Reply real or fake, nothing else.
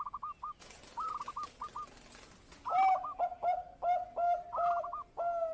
real